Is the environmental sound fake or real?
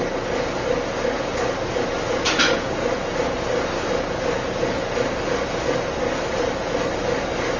real